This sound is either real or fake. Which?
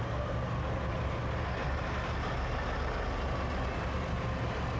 real